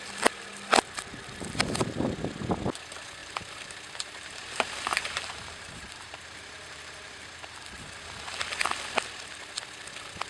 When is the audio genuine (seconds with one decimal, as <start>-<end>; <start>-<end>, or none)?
0.0-3.2; 7.4-10.3